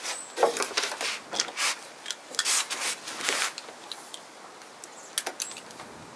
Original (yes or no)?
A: yes